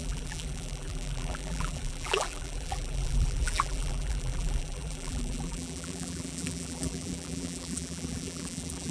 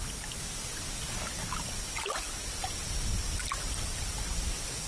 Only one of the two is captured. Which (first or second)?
second